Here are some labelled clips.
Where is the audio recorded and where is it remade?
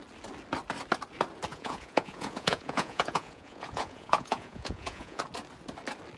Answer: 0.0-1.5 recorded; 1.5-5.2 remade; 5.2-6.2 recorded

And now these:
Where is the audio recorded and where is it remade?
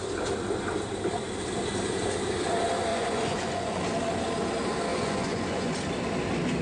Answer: 0.0-2.9 recorded; 2.9-3.8 remade; 3.8-4.9 recorded; 4.9-5.7 remade; 5.7-6.6 recorded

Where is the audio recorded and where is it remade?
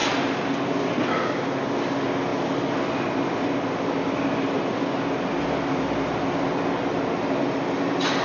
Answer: 0.0-8.2 recorded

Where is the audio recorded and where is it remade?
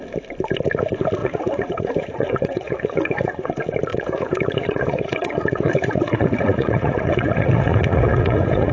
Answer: 0.0-1.2 recorded; 1.2-3.5 remade; 3.5-3.9 recorded; 3.9-8.7 remade